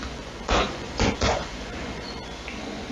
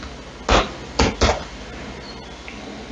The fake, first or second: first